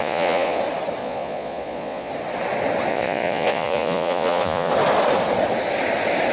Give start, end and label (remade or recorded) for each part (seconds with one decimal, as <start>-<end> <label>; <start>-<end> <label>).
0.0-0.6 remade; 0.6-1.0 recorded; 1.0-2.1 remade; 2.1-2.9 recorded; 2.9-4.7 remade; 4.7-6.3 recorded